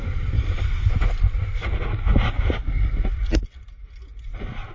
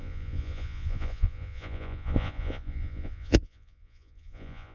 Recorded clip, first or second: first